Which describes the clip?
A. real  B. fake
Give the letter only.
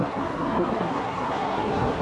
B